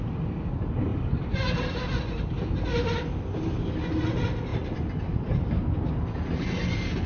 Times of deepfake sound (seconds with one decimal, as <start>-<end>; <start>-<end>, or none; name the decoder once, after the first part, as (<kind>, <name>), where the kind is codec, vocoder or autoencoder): none